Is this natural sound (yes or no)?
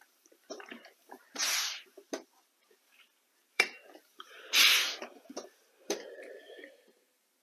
no